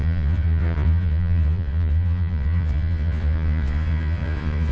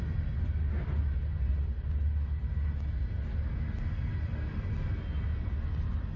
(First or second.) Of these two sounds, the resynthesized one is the first